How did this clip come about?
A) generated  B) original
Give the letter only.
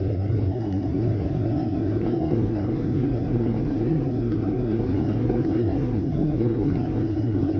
A